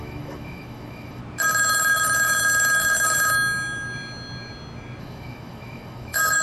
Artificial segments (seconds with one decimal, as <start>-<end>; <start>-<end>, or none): 0.0-1.2; 5.0-6.4